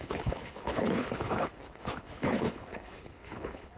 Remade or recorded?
remade